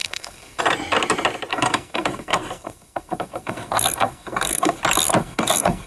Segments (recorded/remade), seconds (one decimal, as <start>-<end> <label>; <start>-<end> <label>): 0.0-0.6 remade; 0.6-1.5 recorded; 1.5-4.8 remade; 4.8-5.2 recorded; 5.2-5.9 remade